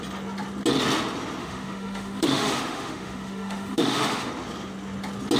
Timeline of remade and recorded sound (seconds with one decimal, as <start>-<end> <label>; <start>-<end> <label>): 0.0-1.4 recorded; 1.4-4.3 remade; 4.3-5.4 recorded